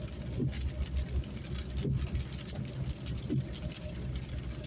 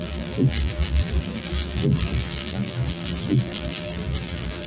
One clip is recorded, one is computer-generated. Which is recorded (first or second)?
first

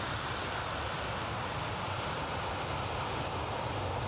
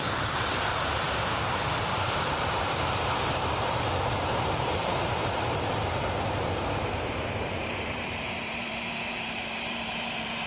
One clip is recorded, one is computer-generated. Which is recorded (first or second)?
first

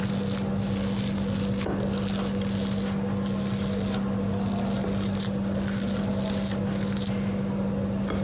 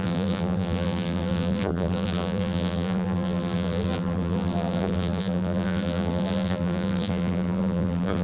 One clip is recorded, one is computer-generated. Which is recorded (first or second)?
first